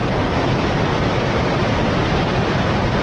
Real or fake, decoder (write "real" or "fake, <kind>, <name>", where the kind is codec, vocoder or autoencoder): real